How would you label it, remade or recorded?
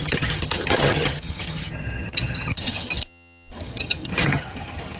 remade